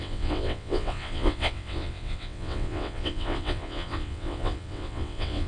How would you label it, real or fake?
fake